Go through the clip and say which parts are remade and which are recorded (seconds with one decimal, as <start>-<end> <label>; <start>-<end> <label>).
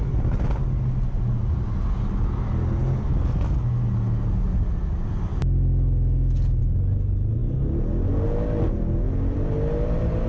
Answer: 0.0-10.3 recorded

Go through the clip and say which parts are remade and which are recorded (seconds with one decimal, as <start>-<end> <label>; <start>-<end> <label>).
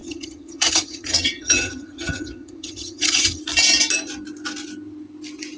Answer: 0.0-3.4 remade; 3.4-5.6 recorded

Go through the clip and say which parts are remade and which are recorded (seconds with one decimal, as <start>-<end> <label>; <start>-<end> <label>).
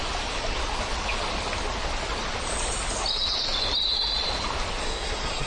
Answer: 0.0-4.8 recorded; 4.8-5.5 remade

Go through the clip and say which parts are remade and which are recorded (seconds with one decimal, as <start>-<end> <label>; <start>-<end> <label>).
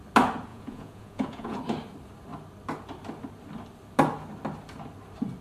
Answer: 0.0-0.5 recorded; 0.5-1.6 remade; 1.6-5.4 recorded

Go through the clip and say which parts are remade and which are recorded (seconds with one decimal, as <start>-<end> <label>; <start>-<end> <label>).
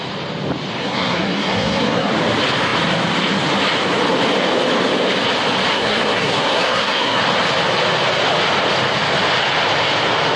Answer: 0.0-0.8 recorded; 0.8-2.1 remade; 2.1-5.7 recorded; 5.7-7.2 remade; 7.2-10.4 recorded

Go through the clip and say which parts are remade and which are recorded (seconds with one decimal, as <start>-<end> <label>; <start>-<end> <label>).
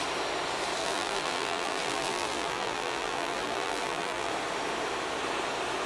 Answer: 0.0-0.8 recorded; 0.8-4.3 remade; 4.3-5.9 recorded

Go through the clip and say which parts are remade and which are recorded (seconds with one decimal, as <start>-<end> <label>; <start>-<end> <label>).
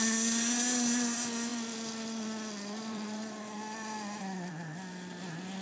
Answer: 0.0-1.5 recorded; 1.5-4.9 remade; 4.9-5.6 recorded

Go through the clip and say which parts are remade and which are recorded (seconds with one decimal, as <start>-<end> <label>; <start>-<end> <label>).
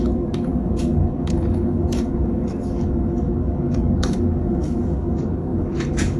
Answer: 0.0-6.2 remade